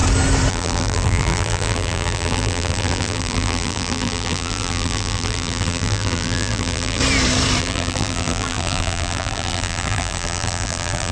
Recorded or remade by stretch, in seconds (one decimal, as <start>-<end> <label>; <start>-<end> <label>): 0.0-0.5 recorded; 0.5-7.0 remade; 7.0-7.6 recorded; 7.6-11.1 remade